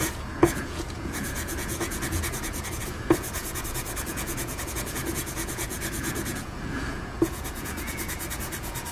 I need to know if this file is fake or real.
fake